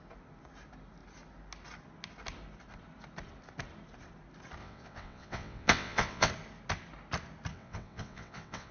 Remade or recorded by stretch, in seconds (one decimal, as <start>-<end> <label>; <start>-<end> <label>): 0.0-4.6 recorded; 4.6-6.3 remade; 6.3-7.5 recorded; 7.5-8.7 remade